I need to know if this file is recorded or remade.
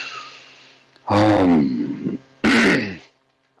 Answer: recorded